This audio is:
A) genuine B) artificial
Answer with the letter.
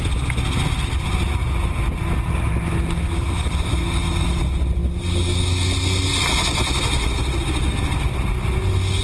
A